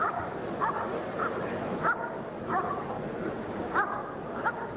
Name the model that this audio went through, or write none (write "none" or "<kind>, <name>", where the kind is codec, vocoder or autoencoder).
vocoder, BigVGAN v2